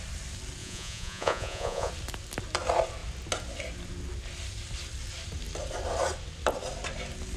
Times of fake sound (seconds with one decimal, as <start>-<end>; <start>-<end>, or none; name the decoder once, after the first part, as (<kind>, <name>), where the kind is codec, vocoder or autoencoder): 0.6-1.9 (vocoder, Vocos)